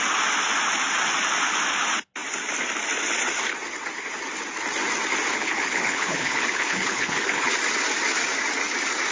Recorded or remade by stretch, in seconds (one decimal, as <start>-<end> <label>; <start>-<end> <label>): 0.0-5.3 recorded; 5.3-7.5 remade; 7.5-9.1 recorded